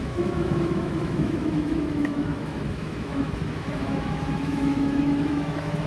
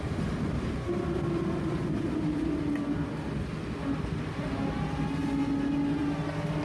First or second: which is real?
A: second